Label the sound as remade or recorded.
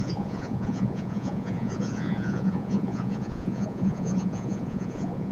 remade